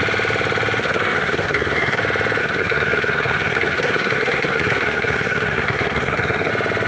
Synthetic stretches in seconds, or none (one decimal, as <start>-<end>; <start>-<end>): 0.8-2.0; 2.4-6.5